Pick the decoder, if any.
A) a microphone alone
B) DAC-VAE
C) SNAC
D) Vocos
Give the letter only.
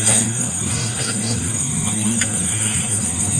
C